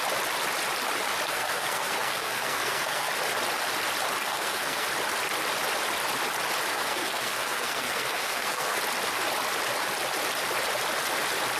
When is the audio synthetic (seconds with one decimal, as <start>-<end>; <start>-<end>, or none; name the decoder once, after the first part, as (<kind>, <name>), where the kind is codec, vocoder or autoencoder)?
1.3-3.1 (codec, SNAC); 4.2-4.9; 6.7-8.8